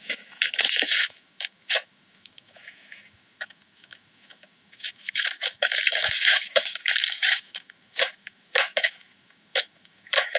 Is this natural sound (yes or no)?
no